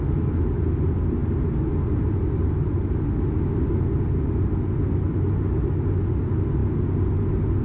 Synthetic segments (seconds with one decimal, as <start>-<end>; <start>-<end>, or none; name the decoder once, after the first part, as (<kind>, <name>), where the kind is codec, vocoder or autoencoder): none